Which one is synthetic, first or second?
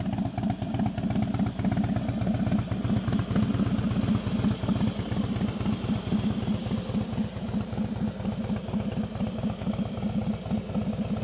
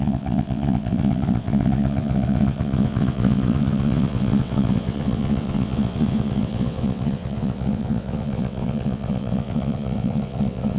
second